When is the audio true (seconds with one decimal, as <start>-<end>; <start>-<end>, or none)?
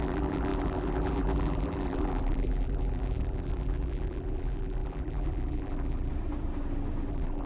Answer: 6.1-7.1